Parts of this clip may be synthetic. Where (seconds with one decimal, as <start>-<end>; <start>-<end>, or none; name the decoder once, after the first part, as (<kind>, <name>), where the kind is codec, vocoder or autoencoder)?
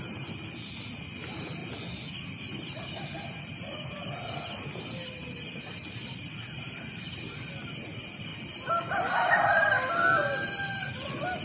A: none